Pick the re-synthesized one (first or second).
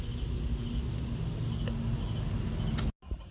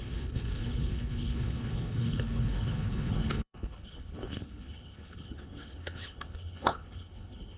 second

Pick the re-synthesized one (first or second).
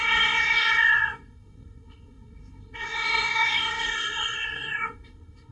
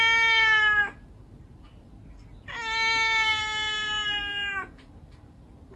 first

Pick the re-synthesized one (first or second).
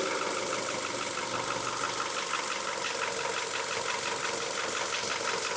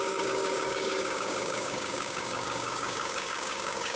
second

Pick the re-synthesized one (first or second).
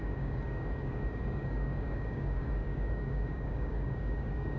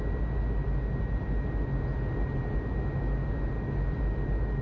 first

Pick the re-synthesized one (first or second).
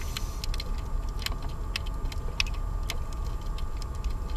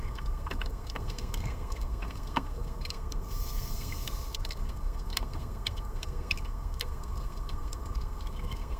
second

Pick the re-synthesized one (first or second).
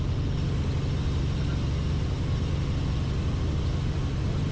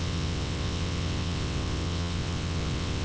second